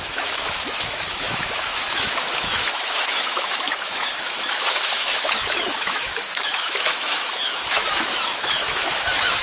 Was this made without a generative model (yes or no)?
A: no